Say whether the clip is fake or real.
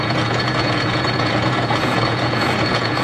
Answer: fake